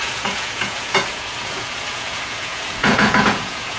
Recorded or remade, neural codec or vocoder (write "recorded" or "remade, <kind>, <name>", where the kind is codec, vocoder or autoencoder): remade, vocoder, Vocos